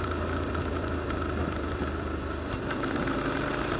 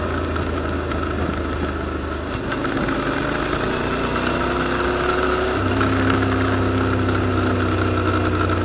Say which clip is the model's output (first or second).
first